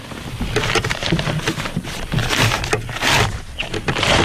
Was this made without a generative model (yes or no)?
yes